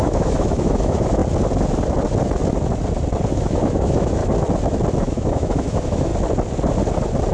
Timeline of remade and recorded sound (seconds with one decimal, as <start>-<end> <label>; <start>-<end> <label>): 0.0-1.2 remade; 1.2-3.3 recorded; 3.3-4.2 remade; 4.2-5.0 recorded; 5.0-6.1 remade; 6.1-7.3 recorded